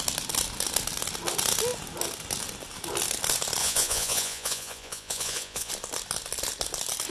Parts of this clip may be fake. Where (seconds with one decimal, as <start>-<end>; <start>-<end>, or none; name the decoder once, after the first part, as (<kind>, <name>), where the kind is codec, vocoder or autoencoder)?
3.6-5.7 (vocoder, Vocos)